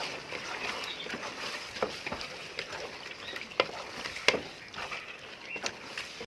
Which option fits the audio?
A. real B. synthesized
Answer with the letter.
A